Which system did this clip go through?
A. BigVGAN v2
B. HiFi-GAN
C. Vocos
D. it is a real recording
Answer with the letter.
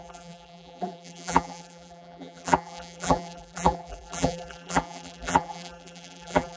A